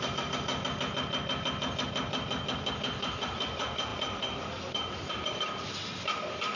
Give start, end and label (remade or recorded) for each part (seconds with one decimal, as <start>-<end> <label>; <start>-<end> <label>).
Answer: 0.0-0.5 remade; 0.5-2.7 recorded; 2.7-6.6 remade